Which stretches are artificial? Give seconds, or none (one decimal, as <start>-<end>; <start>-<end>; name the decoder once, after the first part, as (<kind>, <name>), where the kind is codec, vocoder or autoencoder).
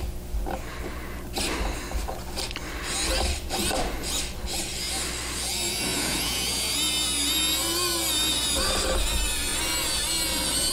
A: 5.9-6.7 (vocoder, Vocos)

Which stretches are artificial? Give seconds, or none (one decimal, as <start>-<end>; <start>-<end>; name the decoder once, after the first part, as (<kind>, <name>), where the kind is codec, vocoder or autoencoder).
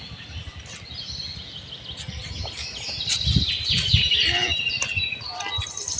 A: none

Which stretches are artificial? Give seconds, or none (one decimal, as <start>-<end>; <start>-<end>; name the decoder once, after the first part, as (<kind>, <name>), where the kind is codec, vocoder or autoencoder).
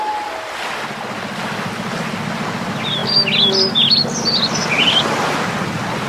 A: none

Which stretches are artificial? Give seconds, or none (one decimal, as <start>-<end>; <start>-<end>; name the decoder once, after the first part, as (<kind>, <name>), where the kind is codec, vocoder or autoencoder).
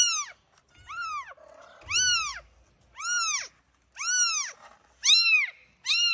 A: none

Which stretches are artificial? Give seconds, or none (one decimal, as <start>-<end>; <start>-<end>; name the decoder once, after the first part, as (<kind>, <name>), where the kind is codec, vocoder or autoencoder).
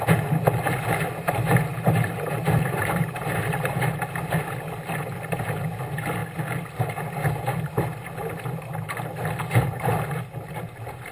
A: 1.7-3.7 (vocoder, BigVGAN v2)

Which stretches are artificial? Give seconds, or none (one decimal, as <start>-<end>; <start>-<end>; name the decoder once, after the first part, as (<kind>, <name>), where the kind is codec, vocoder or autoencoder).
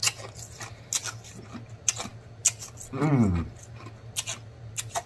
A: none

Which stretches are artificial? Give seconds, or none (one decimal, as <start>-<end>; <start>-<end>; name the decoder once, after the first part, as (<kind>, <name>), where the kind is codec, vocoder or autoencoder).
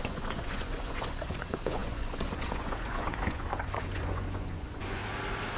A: 0.0-5.0 (vocoder, Vocos)